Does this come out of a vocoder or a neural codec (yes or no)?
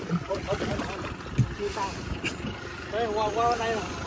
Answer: no